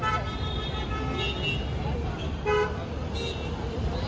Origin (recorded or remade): recorded